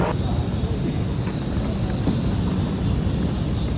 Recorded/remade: recorded